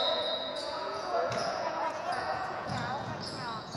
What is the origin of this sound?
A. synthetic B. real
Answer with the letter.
A